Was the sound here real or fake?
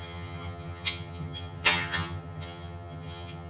fake